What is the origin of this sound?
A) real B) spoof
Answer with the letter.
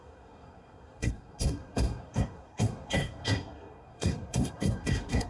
B